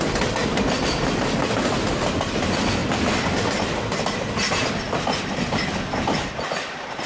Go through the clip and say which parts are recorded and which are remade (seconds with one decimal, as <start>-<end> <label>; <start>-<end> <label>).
0.0-2.8 remade; 2.8-6.5 recorded; 6.5-7.1 remade